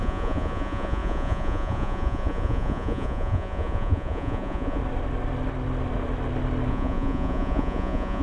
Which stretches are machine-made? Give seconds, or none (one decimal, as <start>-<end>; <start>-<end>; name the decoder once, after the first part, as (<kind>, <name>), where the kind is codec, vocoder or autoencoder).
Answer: 0.0-4.8 (vocoder, Vocos); 6.7-8.2